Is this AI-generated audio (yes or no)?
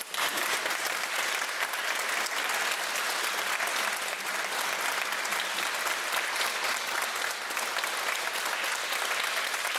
no